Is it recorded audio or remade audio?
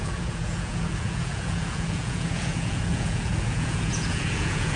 remade